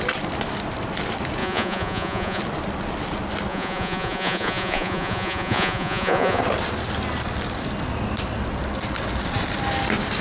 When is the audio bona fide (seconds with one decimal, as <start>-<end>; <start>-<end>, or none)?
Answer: 0.0-1.4; 2.4-3.5; 6.4-10.2